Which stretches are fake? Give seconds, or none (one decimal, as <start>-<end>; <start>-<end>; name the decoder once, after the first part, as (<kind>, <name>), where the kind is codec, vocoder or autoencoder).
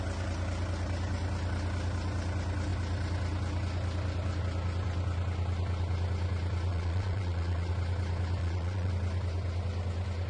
6.7-7.7 (vocoder, Vocos); 8.4-8.9